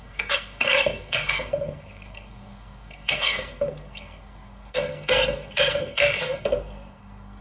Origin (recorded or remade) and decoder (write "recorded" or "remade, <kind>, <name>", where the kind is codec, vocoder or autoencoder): remade, codec, SNAC